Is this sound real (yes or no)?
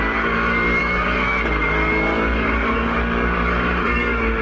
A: no